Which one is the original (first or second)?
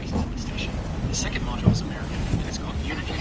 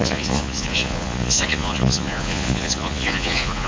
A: first